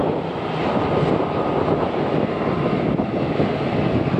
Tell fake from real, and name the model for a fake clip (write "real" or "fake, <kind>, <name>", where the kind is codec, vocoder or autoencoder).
fake, vocoder, BigVGAN v2